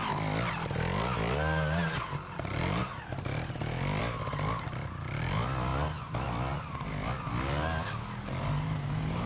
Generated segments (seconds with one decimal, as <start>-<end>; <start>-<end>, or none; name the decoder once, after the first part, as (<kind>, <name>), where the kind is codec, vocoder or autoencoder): none